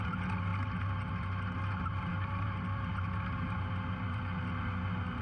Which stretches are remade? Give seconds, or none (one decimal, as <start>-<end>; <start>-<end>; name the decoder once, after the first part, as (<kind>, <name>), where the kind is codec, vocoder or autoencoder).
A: none